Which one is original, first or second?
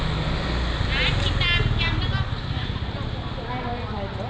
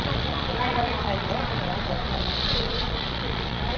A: first